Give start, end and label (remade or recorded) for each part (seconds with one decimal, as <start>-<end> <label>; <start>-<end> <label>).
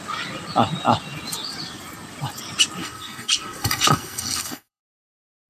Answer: 0.0-2.8 recorded; 2.8-4.8 remade; 4.8-5.5 recorded